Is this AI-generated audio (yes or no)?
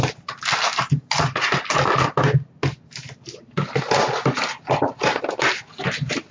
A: no